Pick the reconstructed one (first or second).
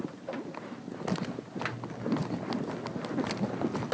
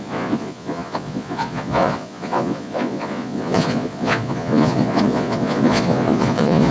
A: second